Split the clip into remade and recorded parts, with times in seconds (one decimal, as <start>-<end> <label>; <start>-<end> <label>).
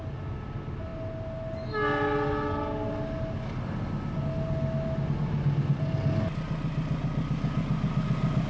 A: 0.0-8.5 recorded